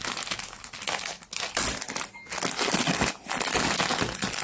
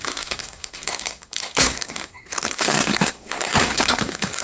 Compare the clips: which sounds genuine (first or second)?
first